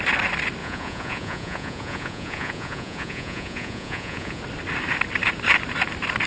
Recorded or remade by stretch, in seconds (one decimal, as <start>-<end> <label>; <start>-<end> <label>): 0.0-0.6 recorded; 0.6-4.4 remade; 4.4-6.3 recorded